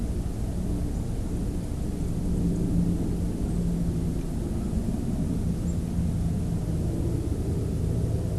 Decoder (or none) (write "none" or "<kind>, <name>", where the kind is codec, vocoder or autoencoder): none